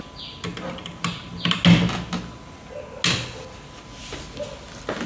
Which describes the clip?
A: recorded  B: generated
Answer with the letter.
A